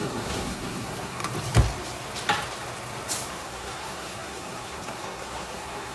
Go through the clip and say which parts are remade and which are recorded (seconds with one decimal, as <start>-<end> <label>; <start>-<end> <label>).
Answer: 0.0-1.2 remade; 1.2-3.3 recorded; 3.3-5.9 remade